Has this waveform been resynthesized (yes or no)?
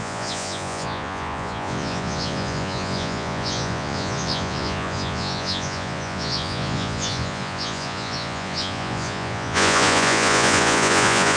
yes